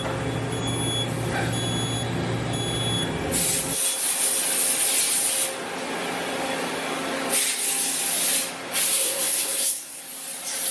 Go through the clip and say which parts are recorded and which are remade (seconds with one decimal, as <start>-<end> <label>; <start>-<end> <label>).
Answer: 0.0-8.9 recorded; 8.9-10.0 remade; 10.0-10.7 recorded